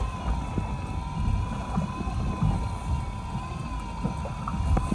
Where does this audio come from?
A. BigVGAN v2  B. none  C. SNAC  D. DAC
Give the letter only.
B